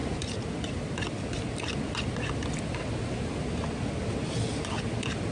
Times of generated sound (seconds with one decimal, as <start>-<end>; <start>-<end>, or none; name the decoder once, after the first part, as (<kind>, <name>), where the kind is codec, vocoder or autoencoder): 0.0-2.6 (vocoder, BigVGAN v2)